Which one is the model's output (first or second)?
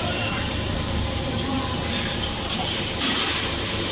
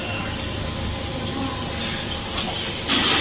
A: first